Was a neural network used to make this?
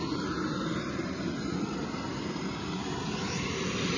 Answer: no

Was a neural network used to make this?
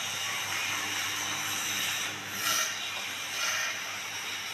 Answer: yes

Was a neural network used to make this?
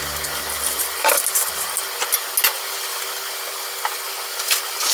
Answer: no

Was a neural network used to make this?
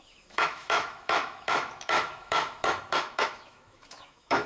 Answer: yes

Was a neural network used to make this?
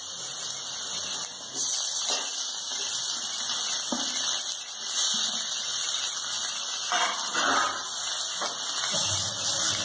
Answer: no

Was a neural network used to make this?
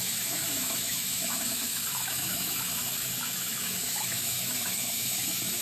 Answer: yes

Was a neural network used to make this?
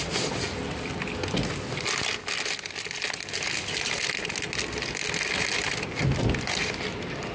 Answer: no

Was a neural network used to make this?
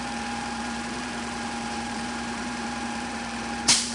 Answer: yes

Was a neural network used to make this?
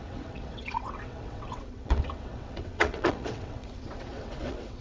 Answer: yes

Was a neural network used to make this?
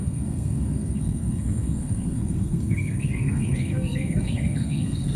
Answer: yes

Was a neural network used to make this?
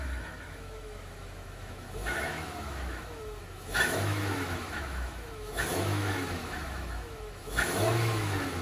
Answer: yes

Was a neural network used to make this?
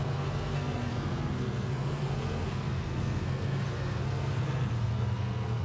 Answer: yes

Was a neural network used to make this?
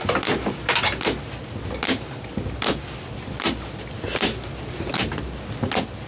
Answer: no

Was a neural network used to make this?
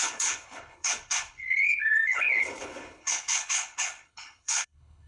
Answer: yes